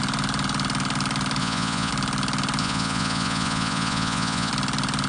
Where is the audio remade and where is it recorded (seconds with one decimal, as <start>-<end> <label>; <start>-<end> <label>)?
0.0-1.4 recorded; 1.4-1.9 remade; 1.9-2.6 recorded; 2.6-4.5 remade; 4.5-5.1 recorded